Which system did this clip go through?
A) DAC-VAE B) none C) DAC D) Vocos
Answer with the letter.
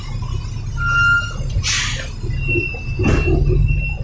B